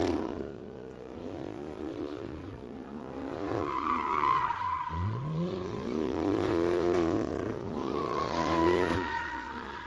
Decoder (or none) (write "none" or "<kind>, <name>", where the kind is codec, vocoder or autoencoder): vocoder, Vocos